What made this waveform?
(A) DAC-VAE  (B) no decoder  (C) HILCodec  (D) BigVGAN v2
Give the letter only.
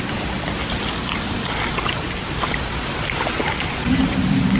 B